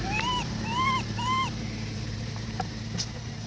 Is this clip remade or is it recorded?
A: remade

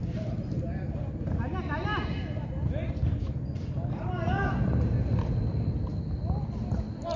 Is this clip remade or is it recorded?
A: recorded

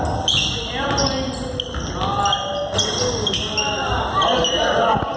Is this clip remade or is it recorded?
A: recorded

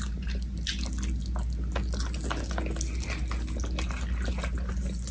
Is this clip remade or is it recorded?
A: recorded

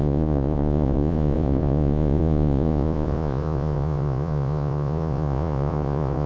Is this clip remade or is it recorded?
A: remade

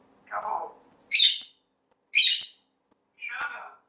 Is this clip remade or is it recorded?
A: recorded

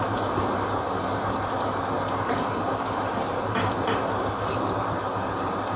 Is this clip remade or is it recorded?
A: remade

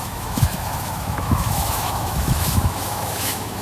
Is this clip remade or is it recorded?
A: remade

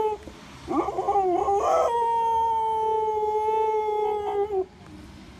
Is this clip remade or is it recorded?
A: recorded